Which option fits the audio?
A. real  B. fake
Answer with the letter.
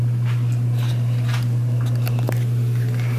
A